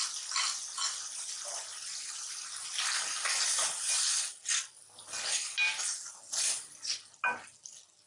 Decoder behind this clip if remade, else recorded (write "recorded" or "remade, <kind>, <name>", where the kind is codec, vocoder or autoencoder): recorded